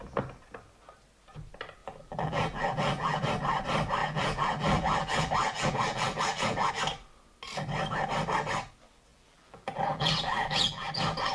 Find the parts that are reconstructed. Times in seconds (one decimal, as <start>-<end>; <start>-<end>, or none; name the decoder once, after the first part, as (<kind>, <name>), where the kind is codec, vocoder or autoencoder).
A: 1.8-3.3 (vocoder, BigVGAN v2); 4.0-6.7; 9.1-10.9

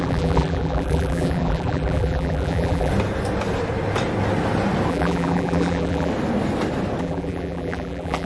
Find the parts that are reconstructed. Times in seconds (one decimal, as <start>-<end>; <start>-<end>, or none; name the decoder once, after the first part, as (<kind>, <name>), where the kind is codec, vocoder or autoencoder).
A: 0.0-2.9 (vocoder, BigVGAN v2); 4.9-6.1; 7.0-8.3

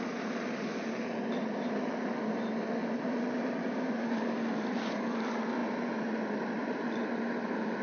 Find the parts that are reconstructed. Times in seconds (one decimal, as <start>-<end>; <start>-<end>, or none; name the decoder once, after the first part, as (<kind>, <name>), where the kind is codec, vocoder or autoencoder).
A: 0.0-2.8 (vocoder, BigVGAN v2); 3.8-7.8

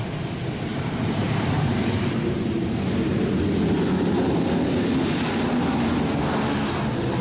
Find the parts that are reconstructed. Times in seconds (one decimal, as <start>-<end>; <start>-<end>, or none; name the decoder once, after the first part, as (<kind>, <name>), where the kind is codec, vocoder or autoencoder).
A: 0.7-1.5 (vocoder, BigVGAN v2)

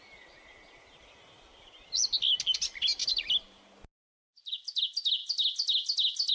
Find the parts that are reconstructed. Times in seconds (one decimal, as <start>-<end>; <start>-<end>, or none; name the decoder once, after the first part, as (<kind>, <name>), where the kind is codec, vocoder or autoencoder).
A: 3.0-3.6 (vocoder, BigVGAN v2); 4.3-4.8